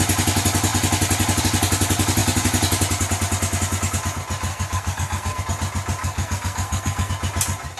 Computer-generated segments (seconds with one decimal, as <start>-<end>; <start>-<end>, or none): 4.5-5.4; 6.0-7.1